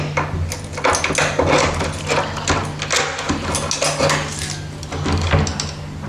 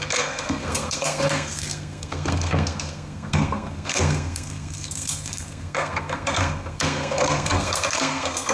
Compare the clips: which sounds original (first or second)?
first